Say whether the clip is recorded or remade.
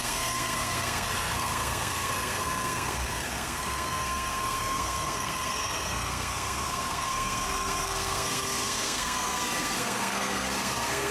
remade